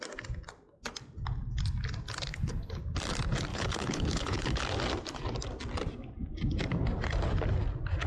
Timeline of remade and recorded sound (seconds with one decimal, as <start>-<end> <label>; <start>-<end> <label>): 0.0-2.3 recorded; 2.3-2.8 remade; 2.8-3.5 recorded; 3.5-4.6 remade; 4.6-8.1 recorded

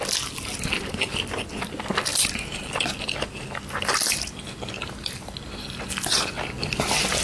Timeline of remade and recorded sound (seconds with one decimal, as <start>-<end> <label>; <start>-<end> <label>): 0.0-7.2 recorded

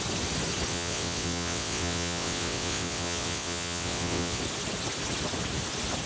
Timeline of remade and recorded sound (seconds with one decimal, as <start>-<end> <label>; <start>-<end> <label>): 0.0-0.7 recorded; 0.7-4.4 remade; 4.4-6.1 recorded

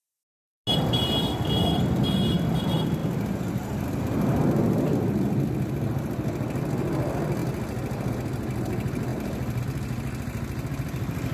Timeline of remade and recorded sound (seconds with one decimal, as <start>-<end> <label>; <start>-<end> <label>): 0.0-11.3 recorded

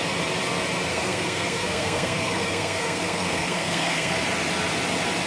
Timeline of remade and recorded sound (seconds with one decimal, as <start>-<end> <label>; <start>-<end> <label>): 0.0-0.9 recorded; 0.9-4.1 remade; 4.1-5.3 recorded

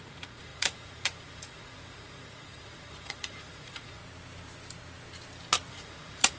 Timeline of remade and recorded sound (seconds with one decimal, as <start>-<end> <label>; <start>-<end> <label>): 0.0-4.0 remade; 4.0-5.7 recorded; 5.7-6.4 remade